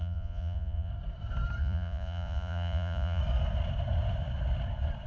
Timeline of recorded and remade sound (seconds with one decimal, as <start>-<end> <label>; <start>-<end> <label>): 0.0-0.9 remade; 0.9-1.6 recorded; 1.6-3.2 remade; 3.2-5.1 recorded